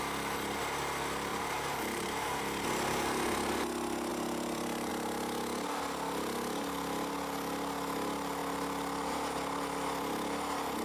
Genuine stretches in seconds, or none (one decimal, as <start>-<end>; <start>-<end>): 0.0-1.3; 2.4-4.1; 4.9-10.8